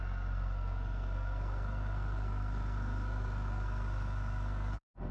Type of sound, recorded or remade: remade